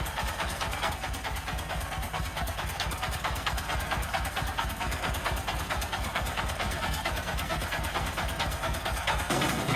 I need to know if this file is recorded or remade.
remade